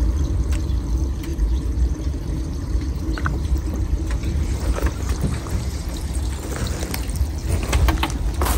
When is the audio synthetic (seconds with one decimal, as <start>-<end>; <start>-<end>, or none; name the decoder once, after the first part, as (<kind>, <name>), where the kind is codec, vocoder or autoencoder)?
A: 1.3-6.3 (vocoder, BigVGAN v2)